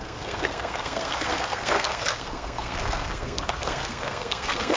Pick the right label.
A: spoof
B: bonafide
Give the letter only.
A